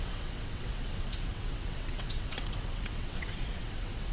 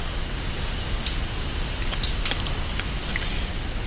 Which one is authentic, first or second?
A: second